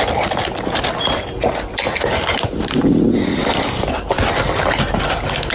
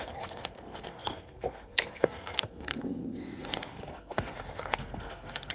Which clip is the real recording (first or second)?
first